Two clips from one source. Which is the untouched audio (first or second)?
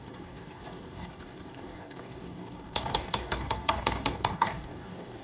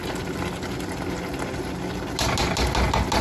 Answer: second